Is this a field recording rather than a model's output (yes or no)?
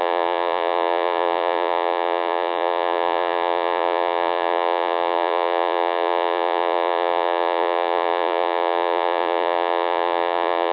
no